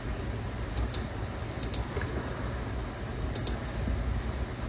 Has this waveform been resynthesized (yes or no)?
no